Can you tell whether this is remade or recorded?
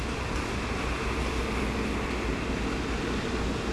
recorded